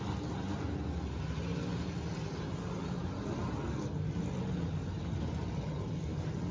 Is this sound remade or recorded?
recorded